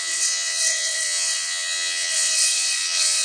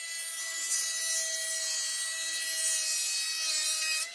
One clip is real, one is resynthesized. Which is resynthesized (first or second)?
first